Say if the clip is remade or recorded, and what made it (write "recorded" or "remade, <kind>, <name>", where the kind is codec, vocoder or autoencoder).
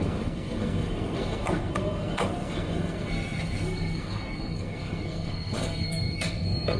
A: remade, codec, SNAC